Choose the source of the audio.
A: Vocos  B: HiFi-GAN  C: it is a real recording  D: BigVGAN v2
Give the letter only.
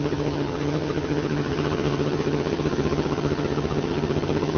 B